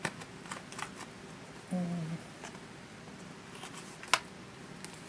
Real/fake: real